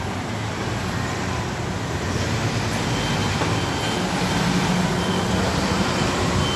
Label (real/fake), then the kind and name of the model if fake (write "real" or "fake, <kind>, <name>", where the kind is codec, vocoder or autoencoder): real